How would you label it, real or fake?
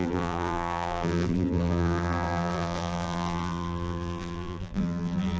fake